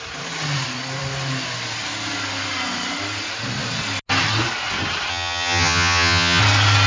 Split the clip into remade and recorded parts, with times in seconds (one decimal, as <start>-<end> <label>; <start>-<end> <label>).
0.0-5.1 recorded; 5.1-6.4 remade; 6.4-6.9 recorded